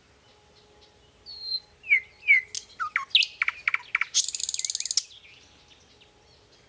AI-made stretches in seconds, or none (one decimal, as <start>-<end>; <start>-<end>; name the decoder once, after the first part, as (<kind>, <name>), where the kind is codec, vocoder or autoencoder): none